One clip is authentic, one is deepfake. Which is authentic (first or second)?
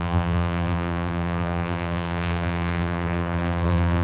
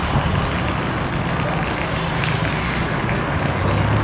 second